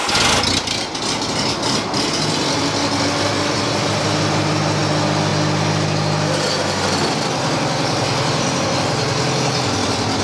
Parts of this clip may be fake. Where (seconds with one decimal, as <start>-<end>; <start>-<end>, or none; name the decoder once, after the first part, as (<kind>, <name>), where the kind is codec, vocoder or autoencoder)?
none